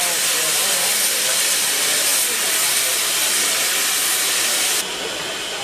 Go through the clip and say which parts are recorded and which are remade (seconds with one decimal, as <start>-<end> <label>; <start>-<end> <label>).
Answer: 0.0-5.6 recorded